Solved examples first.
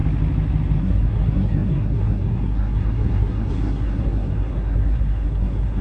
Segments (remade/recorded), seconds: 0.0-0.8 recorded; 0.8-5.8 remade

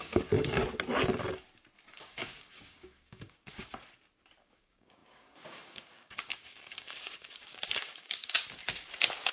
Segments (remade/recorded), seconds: 0.0-0.6 remade; 0.6-1.9 recorded; 1.9-3.6 remade; 3.6-4.4 recorded; 4.4-8.6 remade; 8.6-9.3 recorded

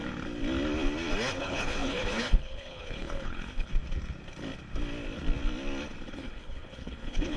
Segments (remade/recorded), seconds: 0.0-1.4 recorded; 1.4-3.7 remade; 3.7-6.1 recorded; 6.1-7.4 remade

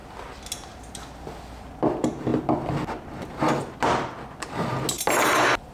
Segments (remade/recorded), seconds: 0.0-5.7 recorded

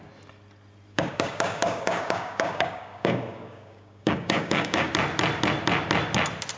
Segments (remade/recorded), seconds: 0.0-0.9 recorded; 0.9-4.9 remade; 4.9-6.6 recorded

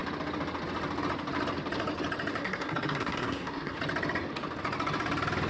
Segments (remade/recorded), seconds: 0.0-2.4 recorded; 2.4-3.8 remade; 3.8-5.5 recorded

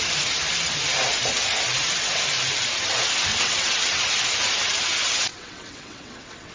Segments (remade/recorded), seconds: 0.0-3.3 recorded; 3.3-4.0 remade; 4.0-5.3 recorded; 5.3-6.5 remade